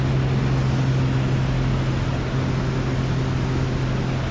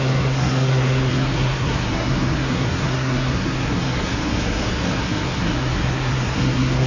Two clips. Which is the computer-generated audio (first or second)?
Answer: second